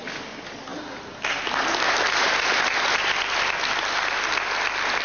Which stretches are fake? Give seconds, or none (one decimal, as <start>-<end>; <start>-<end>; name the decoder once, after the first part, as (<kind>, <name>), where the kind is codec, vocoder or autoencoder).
none